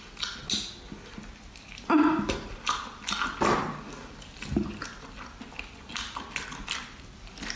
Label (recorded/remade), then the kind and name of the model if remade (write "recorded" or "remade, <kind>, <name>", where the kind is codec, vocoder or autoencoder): recorded